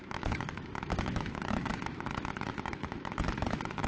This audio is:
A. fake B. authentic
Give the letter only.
A